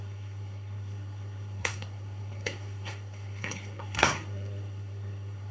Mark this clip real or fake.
fake